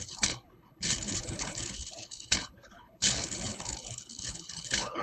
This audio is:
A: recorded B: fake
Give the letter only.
B